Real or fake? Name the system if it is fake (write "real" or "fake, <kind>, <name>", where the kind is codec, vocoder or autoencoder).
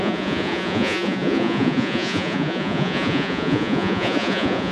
fake, vocoder, Vocos